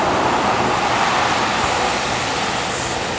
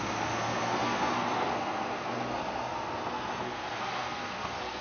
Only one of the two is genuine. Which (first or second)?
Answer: first